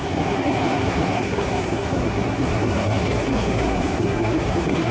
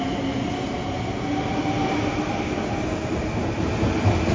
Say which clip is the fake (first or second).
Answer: first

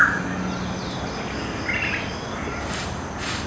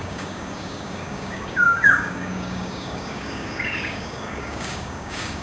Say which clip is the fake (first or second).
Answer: second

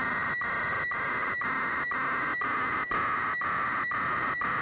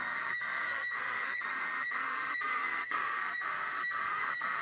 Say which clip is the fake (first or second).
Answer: second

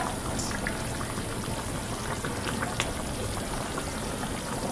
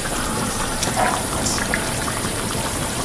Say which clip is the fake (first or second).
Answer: second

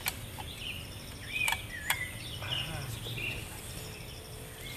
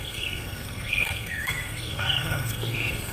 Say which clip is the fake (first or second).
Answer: second